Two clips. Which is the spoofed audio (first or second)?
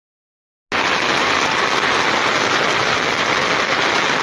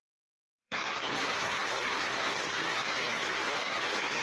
second